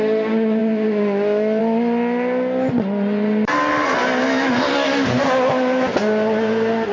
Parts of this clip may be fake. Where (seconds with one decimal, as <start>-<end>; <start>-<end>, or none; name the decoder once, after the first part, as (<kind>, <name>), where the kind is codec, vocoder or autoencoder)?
none